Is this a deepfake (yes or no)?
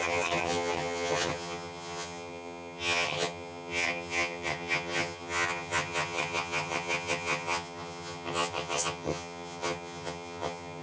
yes